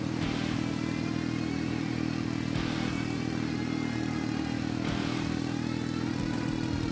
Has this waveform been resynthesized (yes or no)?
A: no